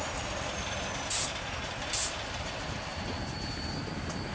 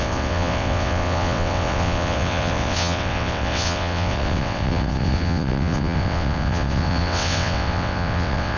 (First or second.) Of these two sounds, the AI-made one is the second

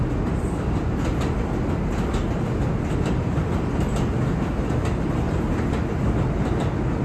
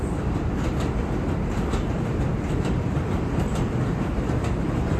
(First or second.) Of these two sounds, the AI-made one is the second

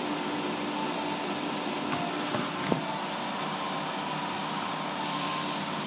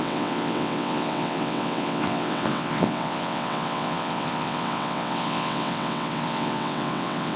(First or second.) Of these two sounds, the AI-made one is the second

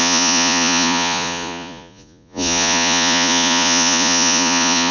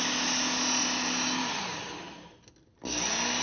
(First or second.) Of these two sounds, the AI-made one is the first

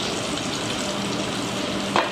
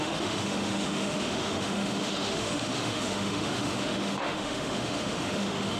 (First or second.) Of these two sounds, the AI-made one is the second